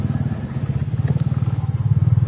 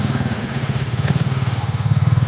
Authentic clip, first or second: first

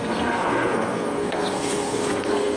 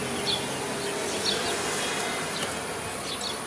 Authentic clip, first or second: second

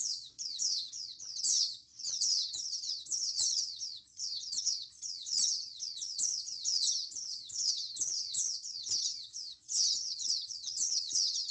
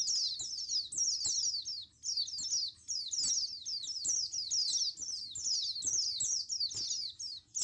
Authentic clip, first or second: second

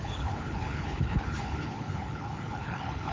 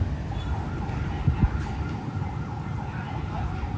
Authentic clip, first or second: second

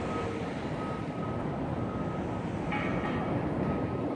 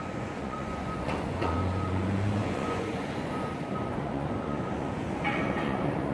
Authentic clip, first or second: first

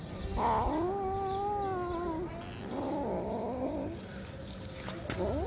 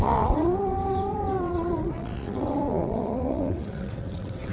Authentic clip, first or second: first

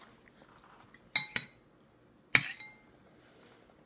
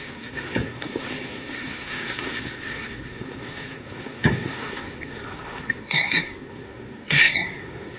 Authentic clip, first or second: first